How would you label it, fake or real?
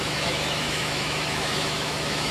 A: fake